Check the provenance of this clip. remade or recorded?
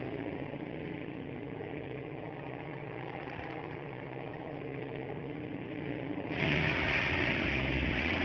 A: remade